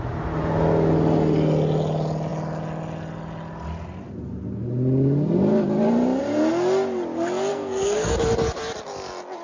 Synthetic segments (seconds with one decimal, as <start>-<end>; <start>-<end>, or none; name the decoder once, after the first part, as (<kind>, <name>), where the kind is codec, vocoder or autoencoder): 7.5-8.1 (codec, SNAC)